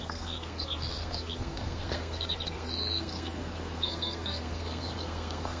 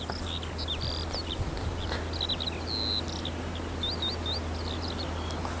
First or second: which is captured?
second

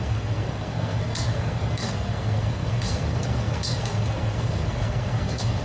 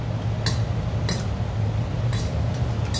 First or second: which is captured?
second